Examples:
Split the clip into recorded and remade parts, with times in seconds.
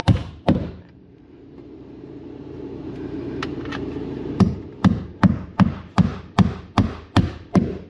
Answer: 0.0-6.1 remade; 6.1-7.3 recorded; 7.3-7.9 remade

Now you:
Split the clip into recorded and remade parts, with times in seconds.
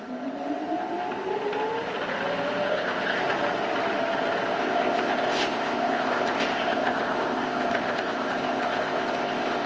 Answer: 0.0-2.7 recorded; 2.7-3.2 remade; 3.2-4.6 recorded; 4.6-9.7 remade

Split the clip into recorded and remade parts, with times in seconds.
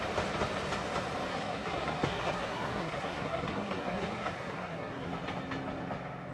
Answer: 0.0-1.3 recorded; 1.3-5.1 remade; 5.1-6.3 recorded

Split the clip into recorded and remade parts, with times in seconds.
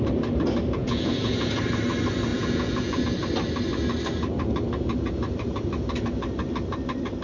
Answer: 0.0-0.8 recorded; 0.8-1.6 remade; 1.6-2.3 recorded; 2.3-3.0 remade; 3.0-7.2 recorded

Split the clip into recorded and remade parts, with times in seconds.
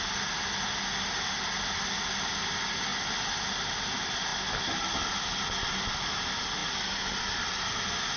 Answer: 0.0-8.2 recorded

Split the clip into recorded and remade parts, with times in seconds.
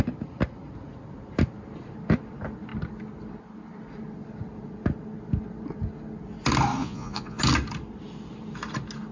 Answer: 0.0-6.8 recorded; 6.8-7.4 remade; 7.4-9.1 recorded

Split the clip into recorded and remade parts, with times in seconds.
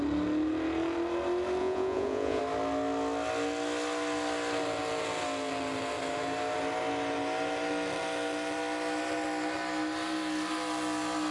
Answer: 0.0-1.6 recorded; 1.6-2.4 remade; 2.4-11.3 recorded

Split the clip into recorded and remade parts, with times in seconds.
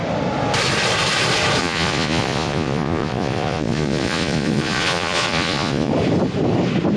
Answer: 0.0-1.6 recorded; 1.6-5.9 remade; 5.9-7.0 recorded